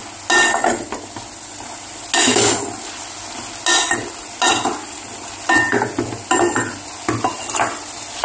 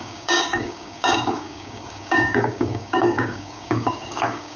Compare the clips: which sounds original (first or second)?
first